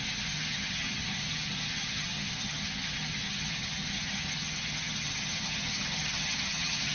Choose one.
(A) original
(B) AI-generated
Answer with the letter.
B